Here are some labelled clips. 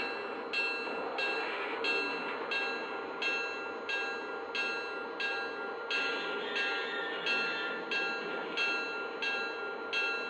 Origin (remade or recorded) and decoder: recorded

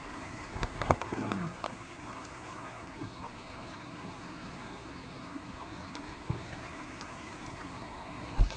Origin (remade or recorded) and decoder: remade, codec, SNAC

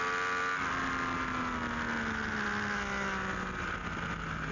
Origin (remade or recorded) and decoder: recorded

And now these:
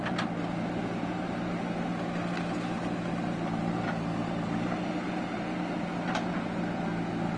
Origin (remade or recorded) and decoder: recorded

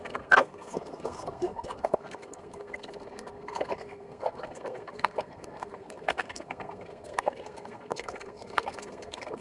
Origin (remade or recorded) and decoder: remade, codec, SNAC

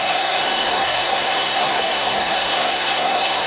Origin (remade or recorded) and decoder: remade, codec, SNAC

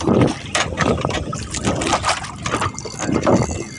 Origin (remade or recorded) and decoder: recorded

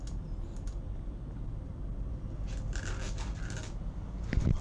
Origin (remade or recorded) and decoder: recorded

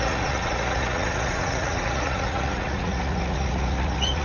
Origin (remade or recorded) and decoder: remade, vocoder, Vocos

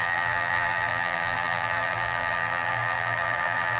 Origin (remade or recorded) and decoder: remade, vocoder, BigVGAN v2